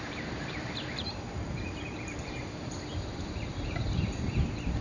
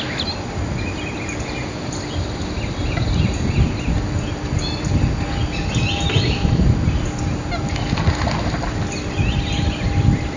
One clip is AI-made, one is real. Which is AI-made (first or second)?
first